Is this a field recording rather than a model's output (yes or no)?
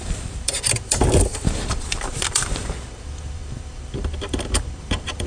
no